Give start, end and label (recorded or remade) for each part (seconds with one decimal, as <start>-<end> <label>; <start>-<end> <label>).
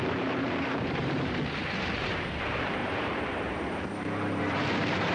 0.0-5.1 remade